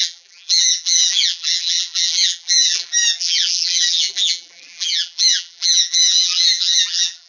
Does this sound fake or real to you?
fake